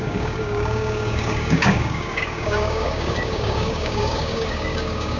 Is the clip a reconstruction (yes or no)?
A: yes